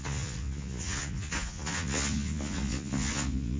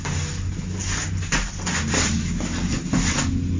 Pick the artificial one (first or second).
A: first